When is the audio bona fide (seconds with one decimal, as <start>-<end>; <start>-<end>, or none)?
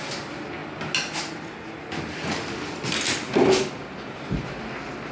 0.0-5.1